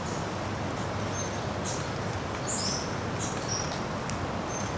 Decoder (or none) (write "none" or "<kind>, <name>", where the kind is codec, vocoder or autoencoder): none